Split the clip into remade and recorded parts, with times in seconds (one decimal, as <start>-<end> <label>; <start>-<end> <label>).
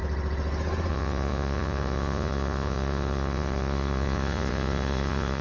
0.0-0.9 recorded; 0.9-5.4 remade